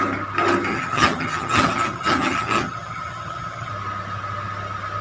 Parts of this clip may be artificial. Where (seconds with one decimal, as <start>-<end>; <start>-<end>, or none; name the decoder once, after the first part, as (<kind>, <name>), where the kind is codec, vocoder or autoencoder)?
0.7-3.7 (vocoder, HiFi-GAN)